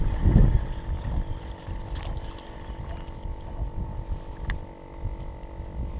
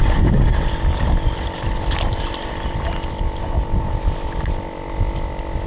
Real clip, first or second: first